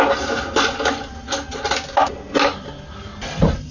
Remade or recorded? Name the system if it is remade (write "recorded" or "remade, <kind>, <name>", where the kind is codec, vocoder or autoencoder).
recorded